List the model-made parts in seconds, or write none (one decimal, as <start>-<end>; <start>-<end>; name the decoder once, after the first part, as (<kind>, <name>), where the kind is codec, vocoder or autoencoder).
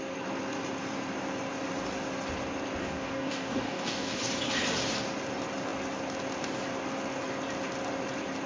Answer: 2.8-4.2 (codec, DAC)